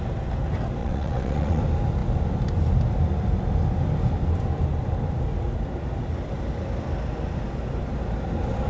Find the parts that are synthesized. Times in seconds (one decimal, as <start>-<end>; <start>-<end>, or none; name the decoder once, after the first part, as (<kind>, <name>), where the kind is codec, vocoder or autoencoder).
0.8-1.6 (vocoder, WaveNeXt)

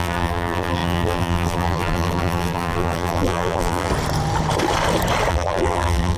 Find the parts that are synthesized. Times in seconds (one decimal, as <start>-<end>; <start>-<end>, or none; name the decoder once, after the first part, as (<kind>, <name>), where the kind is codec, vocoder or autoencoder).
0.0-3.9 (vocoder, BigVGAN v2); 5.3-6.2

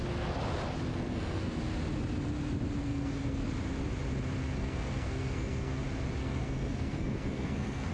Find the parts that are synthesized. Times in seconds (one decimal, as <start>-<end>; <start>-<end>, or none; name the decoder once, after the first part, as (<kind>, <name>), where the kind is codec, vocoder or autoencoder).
0.9-1.6 (codec, SNAC); 2.8-3.5; 4.6-5.8; 6.2-7.9

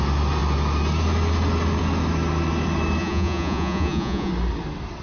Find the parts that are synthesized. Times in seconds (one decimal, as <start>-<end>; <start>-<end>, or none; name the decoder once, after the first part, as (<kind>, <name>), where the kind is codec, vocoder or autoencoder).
3.0-4.3 (vocoder, Vocos)

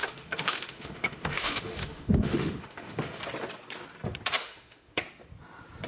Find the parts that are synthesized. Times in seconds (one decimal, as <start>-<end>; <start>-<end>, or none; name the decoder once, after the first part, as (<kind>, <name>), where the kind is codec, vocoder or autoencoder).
0.0-3.2 (autoencoder, DAC-VAE); 4.4-5.0